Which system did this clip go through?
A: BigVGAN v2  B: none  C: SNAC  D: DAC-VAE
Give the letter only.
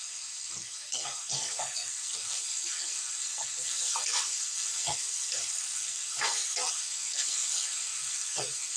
C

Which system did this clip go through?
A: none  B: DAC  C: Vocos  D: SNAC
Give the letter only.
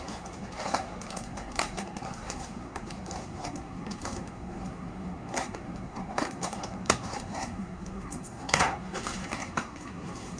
D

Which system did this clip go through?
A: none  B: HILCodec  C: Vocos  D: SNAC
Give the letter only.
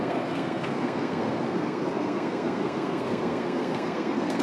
D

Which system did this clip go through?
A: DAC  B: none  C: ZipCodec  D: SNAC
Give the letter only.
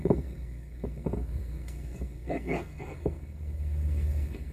D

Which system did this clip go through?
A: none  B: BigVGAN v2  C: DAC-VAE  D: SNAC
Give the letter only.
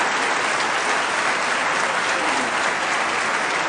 A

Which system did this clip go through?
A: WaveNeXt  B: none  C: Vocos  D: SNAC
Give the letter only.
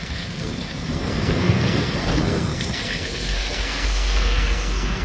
D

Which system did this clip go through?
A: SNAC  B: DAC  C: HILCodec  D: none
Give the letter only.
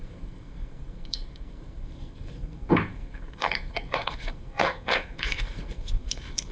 A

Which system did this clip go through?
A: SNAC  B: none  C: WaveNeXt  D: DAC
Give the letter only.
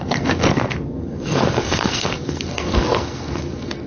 A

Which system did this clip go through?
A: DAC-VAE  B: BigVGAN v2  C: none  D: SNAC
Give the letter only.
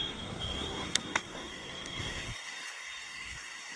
D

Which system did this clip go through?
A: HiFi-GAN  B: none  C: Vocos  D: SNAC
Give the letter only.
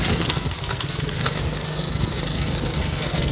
D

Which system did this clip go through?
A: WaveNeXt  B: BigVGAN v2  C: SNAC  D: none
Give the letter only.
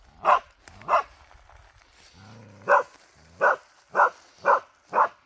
D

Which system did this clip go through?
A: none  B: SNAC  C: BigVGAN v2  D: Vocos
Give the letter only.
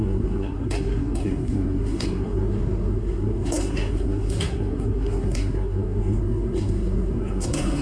B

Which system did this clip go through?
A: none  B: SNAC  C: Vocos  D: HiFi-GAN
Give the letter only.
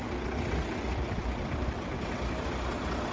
A